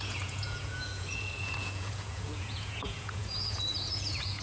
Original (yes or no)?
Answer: no